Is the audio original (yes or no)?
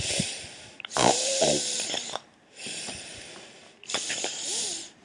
yes